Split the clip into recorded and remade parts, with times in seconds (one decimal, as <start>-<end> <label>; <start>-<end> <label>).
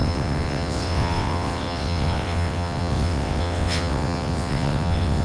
0.0-5.2 remade